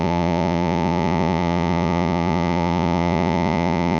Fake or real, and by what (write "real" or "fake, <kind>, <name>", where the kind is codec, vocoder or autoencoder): fake, vocoder, Vocos